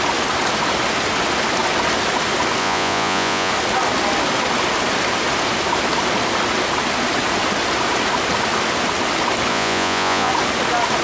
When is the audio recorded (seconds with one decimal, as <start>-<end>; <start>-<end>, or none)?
0.0-2.6; 3.5-9.5; 10.3-11.0